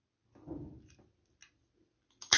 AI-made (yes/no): no